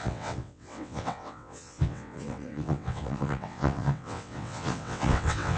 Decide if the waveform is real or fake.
fake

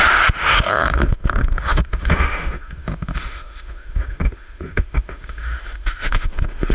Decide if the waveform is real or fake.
fake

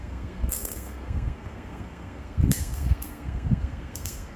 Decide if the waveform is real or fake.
fake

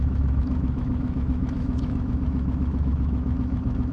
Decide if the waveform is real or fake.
fake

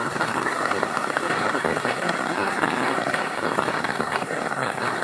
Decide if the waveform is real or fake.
fake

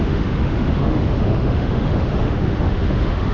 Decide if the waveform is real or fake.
fake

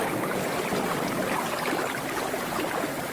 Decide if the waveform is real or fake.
real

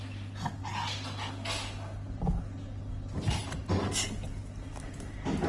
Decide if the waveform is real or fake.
real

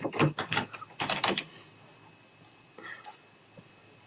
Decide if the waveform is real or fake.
real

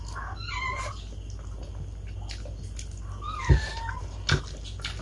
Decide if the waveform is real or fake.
real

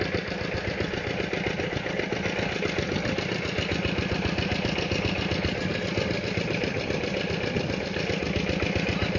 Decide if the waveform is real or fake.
real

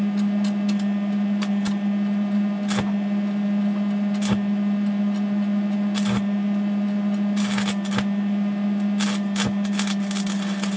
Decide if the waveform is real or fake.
real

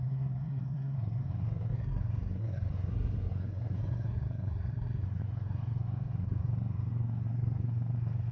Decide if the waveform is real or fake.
fake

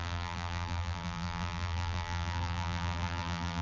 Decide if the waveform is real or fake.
fake